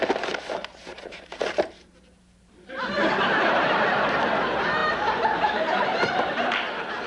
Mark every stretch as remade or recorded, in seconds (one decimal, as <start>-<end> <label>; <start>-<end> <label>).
0.0-0.9 recorded; 0.9-4.1 remade; 4.1-4.8 recorded; 4.8-6.6 remade; 6.6-7.1 recorded

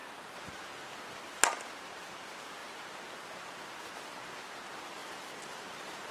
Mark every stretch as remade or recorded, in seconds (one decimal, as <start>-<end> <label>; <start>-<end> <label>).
0.0-0.6 remade; 0.6-5.0 recorded; 5.0-6.1 remade

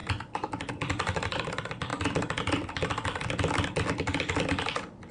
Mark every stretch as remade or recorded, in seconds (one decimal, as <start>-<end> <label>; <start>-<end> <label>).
0.0-1.9 remade; 1.9-5.1 recorded

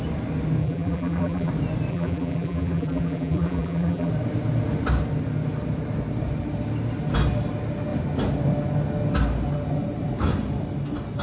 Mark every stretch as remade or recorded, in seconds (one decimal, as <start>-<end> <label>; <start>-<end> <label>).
0.0-0.6 recorded; 0.6-1.5 remade; 1.5-1.9 recorded; 1.9-4.1 remade; 4.1-11.2 recorded